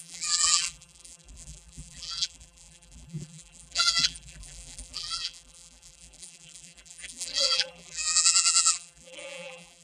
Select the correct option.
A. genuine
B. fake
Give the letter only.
B